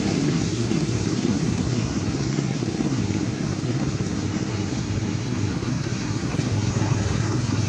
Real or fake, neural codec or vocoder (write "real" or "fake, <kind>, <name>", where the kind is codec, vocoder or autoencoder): fake, codec, SNAC